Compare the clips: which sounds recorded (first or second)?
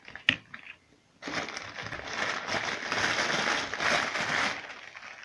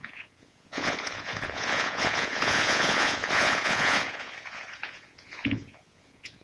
first